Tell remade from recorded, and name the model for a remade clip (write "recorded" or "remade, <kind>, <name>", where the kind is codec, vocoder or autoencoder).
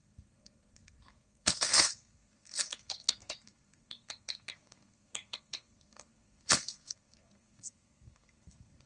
remade, codec, SNAC